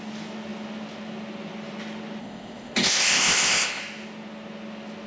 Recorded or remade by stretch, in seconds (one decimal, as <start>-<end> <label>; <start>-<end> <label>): 0.0-2.2 recorded; 2.2-3.8 remade; 3.8-5.1 recorded